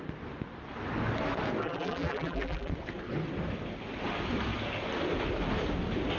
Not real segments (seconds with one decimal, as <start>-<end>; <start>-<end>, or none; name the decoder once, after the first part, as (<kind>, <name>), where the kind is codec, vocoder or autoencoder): 1.6-2.7 (vocoder, BigVGAN v2)

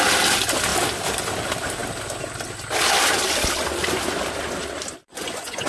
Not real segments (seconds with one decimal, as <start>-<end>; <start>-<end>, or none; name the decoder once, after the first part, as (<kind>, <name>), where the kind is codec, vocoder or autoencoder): 5.0-5.7 (vocoder, Vocos)

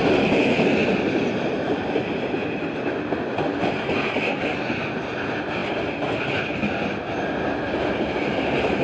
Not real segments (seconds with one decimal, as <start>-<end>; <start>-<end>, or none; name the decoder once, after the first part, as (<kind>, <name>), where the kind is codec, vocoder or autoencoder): none

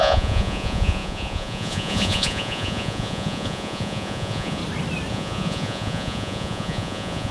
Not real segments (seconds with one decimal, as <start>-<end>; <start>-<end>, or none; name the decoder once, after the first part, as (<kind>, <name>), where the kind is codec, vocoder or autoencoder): 0.0-4.6 (vocoder, Vocos); 5.1-7.3

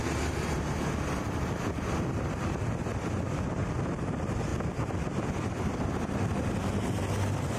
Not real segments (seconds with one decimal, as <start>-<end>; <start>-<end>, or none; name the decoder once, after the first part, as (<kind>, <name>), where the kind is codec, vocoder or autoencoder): none